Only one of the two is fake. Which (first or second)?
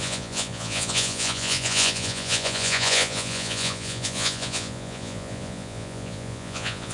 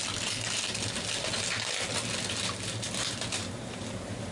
first